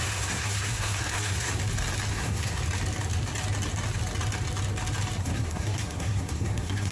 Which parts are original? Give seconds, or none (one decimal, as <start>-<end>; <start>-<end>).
1.5-2.1; 2.6-5.2